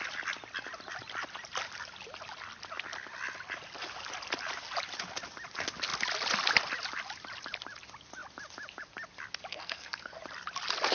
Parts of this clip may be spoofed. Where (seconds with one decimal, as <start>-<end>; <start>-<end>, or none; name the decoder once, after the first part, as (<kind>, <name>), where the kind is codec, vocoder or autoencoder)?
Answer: 9.5-10.2 (codec, SNAC)